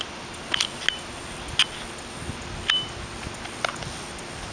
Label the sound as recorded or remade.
recorded